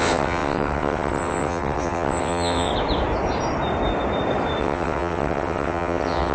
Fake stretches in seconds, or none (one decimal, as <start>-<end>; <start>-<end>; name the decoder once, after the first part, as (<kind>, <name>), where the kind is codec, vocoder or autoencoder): 0.0-2.7 (vocoder, WaveNeXt); 4.6-6.3